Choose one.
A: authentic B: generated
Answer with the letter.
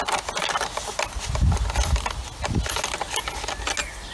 A